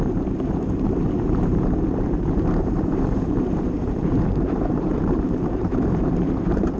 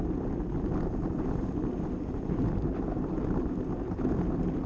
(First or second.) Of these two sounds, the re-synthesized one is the first